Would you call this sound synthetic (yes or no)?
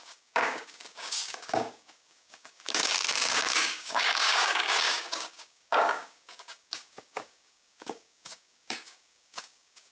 yes